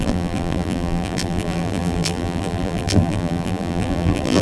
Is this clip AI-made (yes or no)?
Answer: yes